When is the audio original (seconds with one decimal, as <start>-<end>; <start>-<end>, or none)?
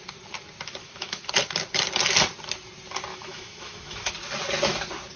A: 0.0-0.8; 1.3-3.1; 4.1-5.2